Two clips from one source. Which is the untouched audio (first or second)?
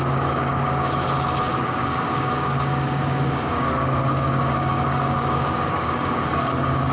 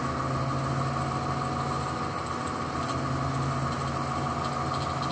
second